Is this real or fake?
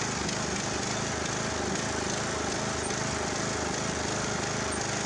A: real